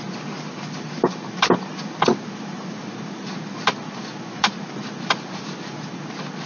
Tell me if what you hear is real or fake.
real